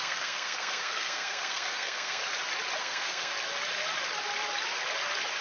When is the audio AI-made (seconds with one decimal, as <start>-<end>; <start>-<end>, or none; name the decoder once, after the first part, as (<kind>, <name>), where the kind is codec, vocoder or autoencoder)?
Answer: 0.0-2.2 (codec, SNAC); 2.8-3.3